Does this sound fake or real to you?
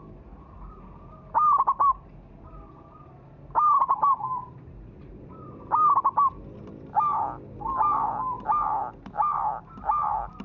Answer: real